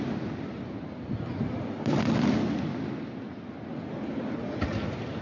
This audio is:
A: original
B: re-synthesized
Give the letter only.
A